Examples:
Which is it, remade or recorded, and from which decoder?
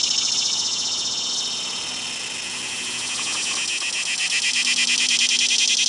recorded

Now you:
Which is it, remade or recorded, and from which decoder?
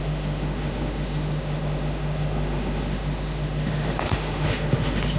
remade, autoencoder, DAC-VAE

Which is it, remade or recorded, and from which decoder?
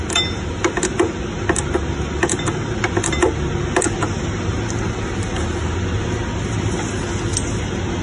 recorded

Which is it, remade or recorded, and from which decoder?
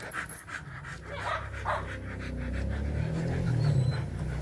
recorded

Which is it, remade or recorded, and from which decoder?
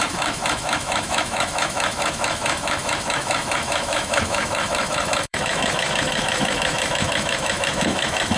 remade, autoencoder, DAC-VAE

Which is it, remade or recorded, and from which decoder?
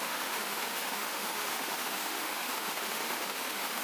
remade, autoencoder, DAC-VAE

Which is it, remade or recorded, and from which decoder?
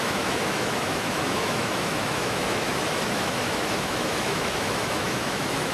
remade, autoencoder, DAC-VAE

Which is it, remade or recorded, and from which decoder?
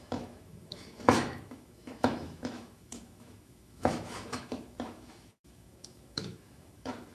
remade, autoencoder, DAC-VAE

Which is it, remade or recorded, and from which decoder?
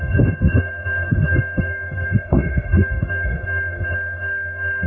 remade, autoencoder, DAC-VAE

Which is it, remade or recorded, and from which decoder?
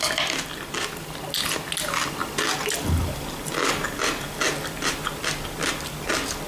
recorded